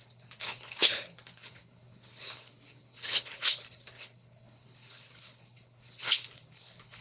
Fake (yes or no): yes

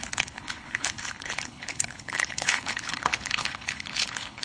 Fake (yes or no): yes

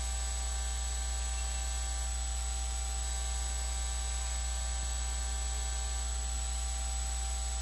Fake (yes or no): no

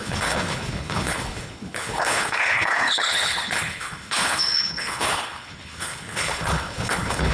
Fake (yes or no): yes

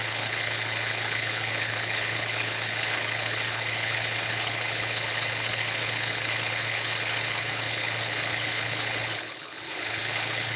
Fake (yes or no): yes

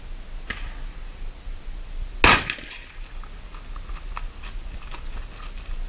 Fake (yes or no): no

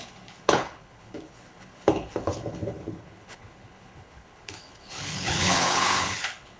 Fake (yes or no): yes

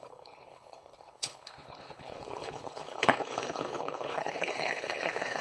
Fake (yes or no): yes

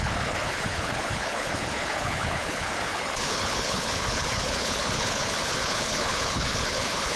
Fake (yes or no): yes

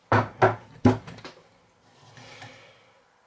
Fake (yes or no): no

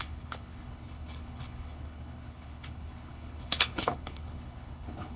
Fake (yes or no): yes